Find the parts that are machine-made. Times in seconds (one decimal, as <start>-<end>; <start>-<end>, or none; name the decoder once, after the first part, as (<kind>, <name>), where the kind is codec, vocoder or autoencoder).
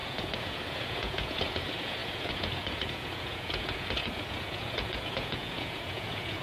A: 0.0-6.4 (vocoder, Vocos)